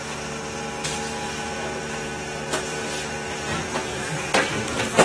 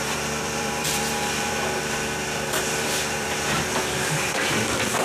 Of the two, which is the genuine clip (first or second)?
first